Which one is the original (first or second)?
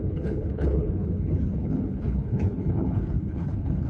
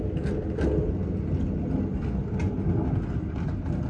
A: second